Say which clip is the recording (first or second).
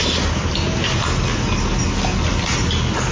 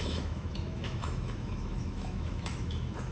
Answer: first